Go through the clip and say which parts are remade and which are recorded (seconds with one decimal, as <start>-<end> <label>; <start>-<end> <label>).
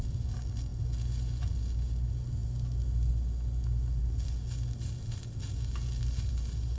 0.0-6.8 recorded